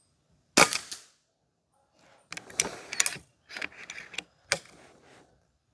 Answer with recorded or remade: recorded